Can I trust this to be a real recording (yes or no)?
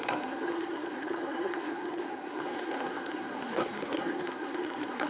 no